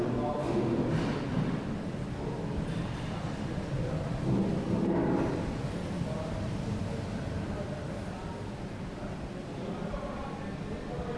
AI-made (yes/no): no